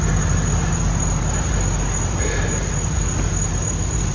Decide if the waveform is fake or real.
real